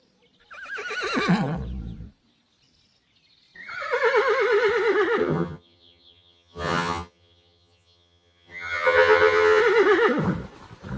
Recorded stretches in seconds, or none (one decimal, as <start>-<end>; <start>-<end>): 0.0-5.2; 9.6-11.0